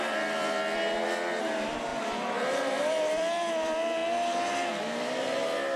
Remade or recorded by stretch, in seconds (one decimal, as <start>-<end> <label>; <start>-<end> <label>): 0.0-4.0 remade; 4.0-4.7 recorded; 4.7-5.8 remade